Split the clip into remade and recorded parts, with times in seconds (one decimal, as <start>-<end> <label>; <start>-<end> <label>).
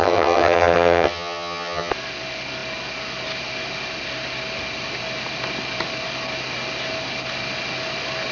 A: 0.0-1.9 remade; 1.9-8.3 recorded